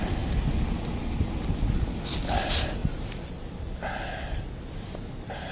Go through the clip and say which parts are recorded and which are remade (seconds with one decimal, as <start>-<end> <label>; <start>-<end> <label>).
0.0-5.5 recorded